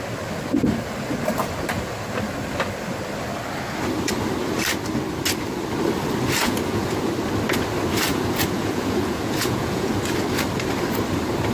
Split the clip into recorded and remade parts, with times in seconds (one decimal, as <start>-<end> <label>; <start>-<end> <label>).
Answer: 0.0-6.4 recorded; 6.4-7.1 remade; 7.1-8.1 recorded; 8.1-9.9 remade; 9.9-11.5 recorded